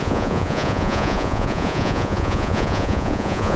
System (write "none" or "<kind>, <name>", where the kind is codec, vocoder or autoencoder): vocoder, Vocos